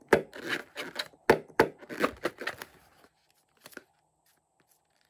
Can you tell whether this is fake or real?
real